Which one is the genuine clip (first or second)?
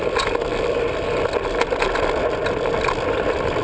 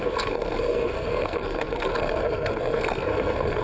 first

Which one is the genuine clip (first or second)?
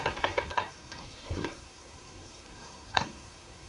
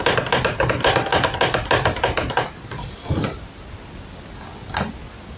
second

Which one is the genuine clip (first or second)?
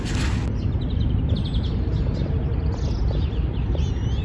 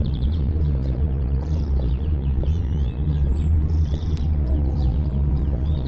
first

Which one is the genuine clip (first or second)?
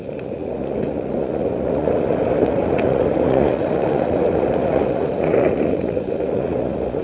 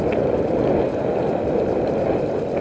second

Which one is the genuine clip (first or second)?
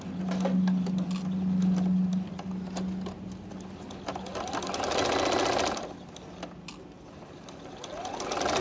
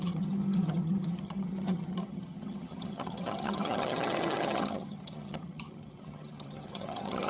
first